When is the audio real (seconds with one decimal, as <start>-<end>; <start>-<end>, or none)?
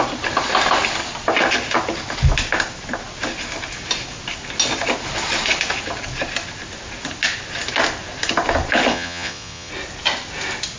0.0-8.9; 9.7-10.8